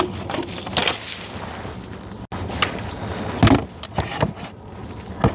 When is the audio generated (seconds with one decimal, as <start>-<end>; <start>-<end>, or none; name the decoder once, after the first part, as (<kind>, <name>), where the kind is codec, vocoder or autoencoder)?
none